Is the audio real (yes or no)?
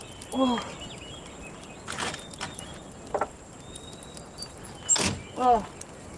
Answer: yes